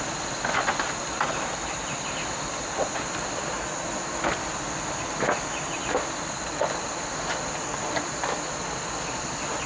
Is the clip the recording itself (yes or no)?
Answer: yes